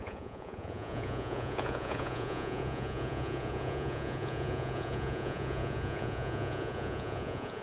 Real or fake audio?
fake